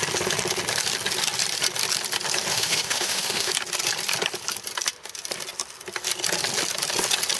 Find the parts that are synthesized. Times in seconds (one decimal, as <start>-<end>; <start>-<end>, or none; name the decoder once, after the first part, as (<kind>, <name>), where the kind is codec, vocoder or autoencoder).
2.5-3.5 (autoencoder, DAC-VAE)